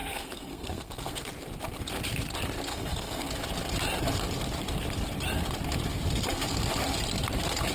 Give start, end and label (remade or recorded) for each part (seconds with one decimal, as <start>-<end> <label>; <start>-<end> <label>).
0.0-1.3 remade; 1.3-2.7 recorded; 2.7-3.3 remade; 3.3-7.7 recorded